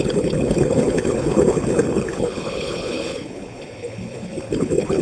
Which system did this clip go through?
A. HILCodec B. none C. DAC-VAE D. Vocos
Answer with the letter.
A